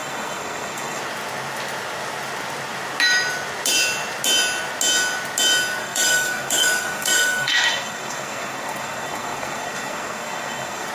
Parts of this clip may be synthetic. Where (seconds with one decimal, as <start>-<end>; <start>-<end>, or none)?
0.0-1.0; 5.8-10.9